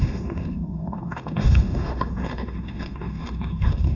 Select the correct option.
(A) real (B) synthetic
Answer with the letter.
B